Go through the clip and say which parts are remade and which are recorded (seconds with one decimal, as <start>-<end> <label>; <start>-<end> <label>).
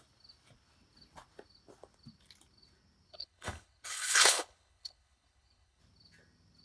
0.0-3.2 recorded; 3.2-5.8 remade; 5.8-6.6 recorded